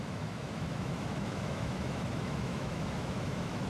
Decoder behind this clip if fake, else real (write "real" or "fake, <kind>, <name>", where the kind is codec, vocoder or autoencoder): fake, autoencoder, DAC-VAE